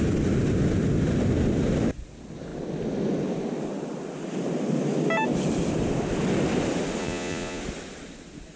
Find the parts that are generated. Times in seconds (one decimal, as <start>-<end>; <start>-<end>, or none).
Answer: 7.0-7.6